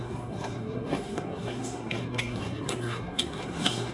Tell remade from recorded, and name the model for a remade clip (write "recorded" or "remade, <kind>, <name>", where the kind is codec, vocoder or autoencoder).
remade, codec, SNAC